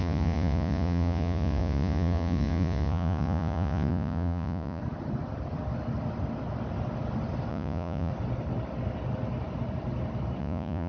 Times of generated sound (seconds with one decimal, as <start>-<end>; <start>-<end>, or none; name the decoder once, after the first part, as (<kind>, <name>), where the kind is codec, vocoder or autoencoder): 0.0-4.8 (vocoder, Vocos); 7.5-8.1; 10.4-10.9

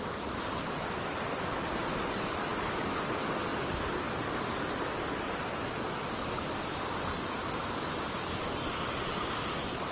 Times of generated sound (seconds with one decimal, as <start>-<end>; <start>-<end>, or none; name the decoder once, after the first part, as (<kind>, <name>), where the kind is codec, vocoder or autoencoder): none